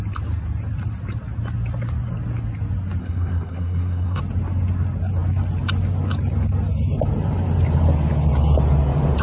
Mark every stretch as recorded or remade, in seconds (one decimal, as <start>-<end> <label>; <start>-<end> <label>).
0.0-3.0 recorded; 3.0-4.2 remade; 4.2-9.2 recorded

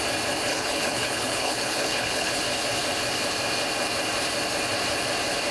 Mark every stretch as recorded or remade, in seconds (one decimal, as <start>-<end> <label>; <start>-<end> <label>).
0.0-0.5 recorded; 0.5-2.3 remade; 2.3-5.5 recorded

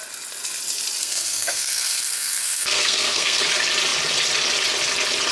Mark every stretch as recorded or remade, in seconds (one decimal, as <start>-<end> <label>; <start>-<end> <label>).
0.0-1.0 recorded; 1.0-3.4 remade; 3.4-5.3 recorded